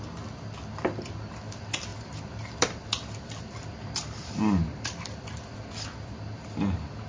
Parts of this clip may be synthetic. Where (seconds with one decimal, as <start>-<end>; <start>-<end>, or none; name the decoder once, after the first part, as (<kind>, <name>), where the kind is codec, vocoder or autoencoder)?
1.9-6.2 (vocoder, BigVGAN v2)